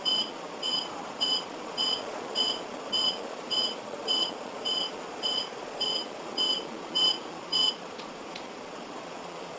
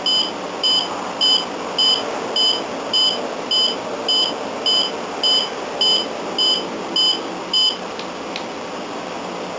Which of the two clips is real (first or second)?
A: second